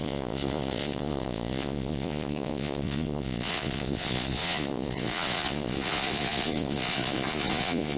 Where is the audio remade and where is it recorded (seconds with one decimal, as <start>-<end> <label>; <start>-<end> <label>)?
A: 0.0-8.0 remade